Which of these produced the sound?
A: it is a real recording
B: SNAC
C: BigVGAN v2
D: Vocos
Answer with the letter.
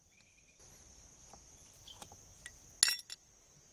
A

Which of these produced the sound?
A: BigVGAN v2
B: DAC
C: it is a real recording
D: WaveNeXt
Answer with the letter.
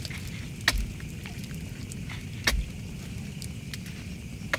C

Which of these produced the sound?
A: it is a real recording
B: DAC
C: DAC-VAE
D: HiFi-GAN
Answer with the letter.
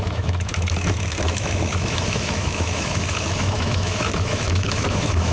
C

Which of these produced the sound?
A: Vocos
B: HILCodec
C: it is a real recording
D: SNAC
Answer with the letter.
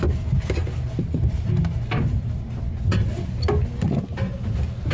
C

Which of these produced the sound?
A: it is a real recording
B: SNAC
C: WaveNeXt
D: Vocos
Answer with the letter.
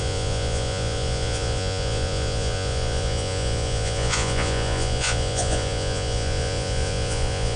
D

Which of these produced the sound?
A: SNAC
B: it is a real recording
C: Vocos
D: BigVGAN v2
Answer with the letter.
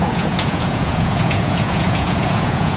C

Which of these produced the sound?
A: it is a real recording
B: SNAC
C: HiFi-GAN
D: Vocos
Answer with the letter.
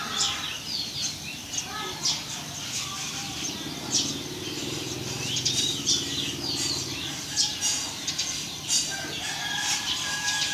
A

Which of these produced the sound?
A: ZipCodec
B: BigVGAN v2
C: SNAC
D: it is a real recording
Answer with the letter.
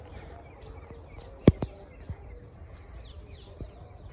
D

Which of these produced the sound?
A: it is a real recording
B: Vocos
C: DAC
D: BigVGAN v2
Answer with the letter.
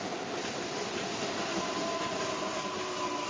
A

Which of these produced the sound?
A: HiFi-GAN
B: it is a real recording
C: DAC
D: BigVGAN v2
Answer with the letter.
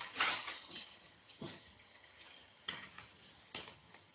A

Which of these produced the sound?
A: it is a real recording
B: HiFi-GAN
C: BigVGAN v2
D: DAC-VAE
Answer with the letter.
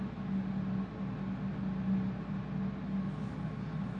A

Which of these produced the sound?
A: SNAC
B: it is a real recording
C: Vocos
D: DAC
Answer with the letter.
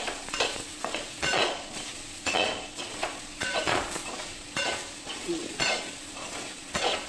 C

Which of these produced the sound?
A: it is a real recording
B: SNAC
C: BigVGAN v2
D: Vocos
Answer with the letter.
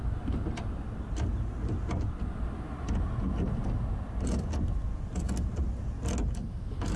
A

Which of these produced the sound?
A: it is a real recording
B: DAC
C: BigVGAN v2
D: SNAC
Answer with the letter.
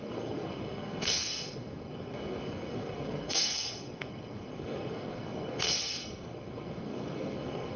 D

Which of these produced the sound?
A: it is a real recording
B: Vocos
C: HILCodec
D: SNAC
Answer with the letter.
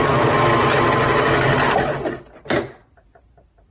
A